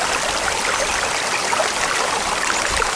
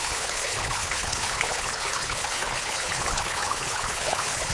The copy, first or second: second